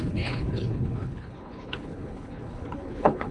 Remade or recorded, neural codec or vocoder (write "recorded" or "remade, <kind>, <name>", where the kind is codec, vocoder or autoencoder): remade, codec, HILCodec